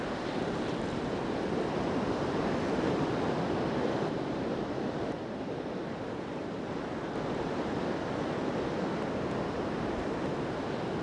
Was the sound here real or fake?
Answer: fake